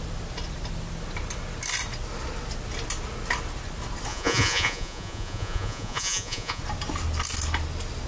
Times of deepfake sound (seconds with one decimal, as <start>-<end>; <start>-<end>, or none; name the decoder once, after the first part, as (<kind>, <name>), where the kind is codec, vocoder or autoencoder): 4.1-6.6 (vocoder, Vocos)